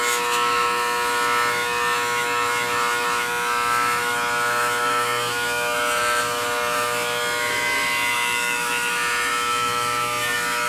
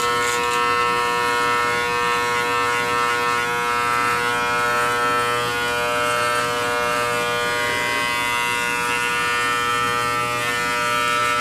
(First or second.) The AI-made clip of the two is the first